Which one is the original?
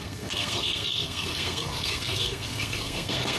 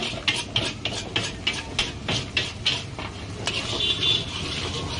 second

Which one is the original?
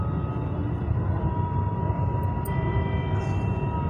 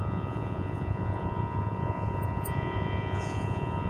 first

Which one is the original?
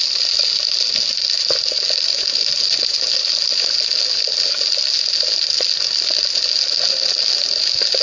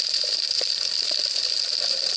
first